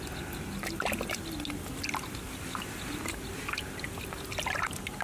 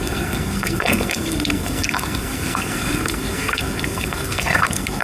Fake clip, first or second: second